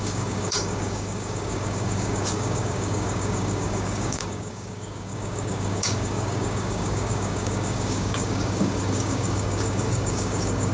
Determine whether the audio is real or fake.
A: fake